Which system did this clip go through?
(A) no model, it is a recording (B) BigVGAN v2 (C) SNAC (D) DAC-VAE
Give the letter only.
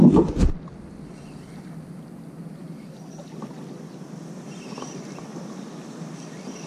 A